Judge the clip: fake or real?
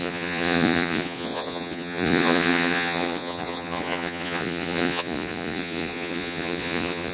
fake